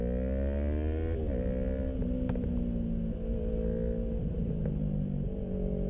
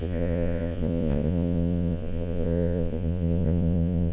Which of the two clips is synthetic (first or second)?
second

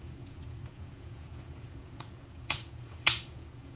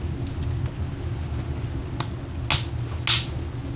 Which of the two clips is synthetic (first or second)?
first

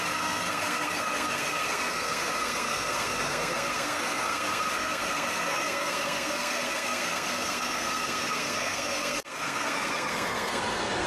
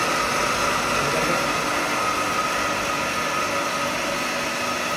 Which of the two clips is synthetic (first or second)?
first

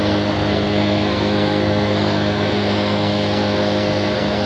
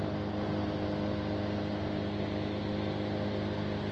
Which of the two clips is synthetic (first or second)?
first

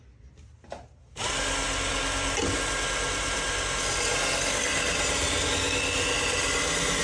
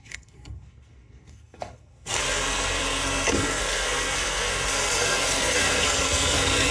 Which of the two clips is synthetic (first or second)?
second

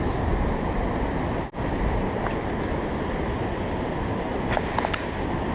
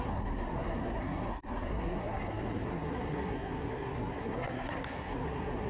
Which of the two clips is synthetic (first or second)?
second